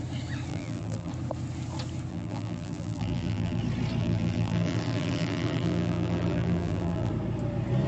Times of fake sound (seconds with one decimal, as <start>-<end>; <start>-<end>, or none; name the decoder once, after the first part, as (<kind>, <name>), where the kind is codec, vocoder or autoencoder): 0.5-1.1 (vocoder, BigVGAN v2); 2.1-3.6; 4.0-7.1